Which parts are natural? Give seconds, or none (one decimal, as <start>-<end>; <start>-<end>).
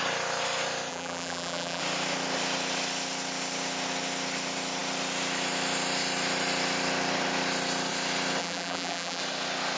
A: 0.0-0.9; 1.8-8.4; 9.2-9.8